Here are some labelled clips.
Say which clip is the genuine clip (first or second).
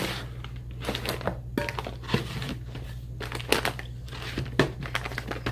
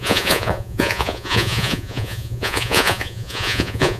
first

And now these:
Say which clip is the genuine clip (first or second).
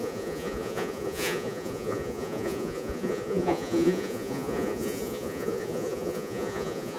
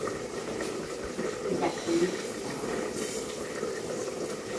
second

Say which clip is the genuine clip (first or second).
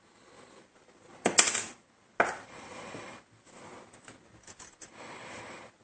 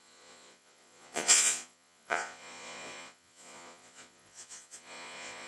first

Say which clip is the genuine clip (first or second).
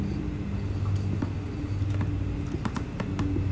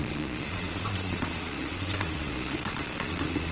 first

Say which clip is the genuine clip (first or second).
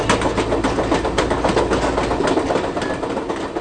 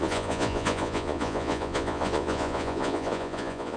first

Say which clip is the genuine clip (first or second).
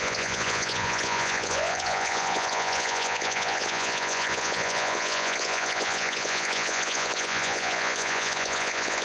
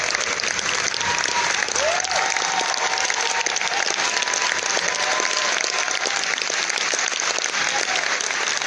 second